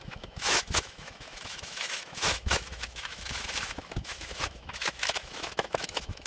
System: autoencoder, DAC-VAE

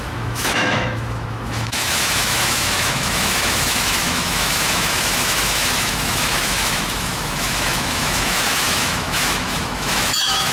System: autoencoder, DAC-VAE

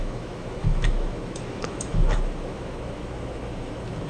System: autoencoder, DAC-VAE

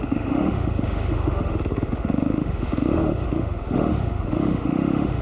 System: autoencoder, DAC-VAE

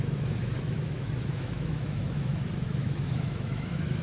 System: autoencoder, DAC-VAE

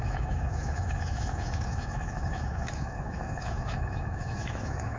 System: autoencoder, DAC-VAE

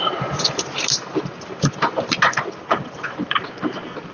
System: none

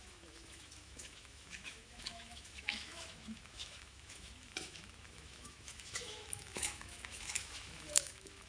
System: autoencoder, DAC-VAE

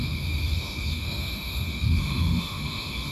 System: autoencoder, DAC-VAE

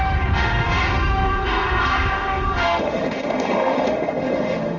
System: autoencoder, DAC-VAE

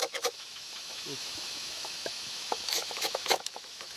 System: autoencoder, DAC-VAE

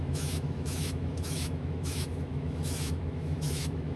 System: autoencoder, DAC-VAE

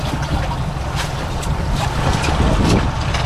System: none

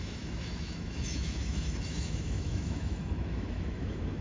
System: autoencoder, DAC-VAE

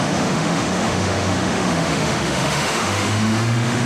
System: autoencoder, DAC-VAE